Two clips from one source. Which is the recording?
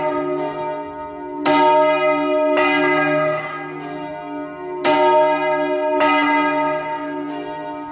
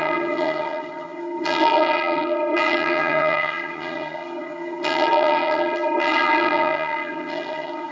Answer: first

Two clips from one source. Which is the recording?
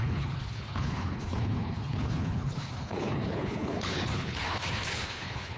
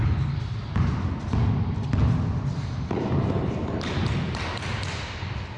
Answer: second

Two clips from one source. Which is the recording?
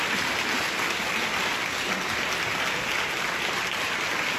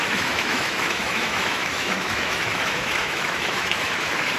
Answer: first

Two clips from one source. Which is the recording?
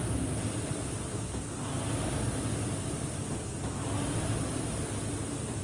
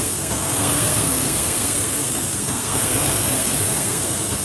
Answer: first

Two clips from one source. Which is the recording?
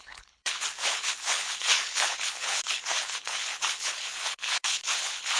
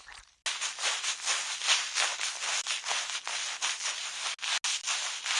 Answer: second